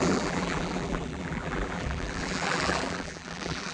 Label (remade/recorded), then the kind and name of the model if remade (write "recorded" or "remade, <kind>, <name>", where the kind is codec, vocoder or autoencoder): remade, vocoder, BigVGAN v2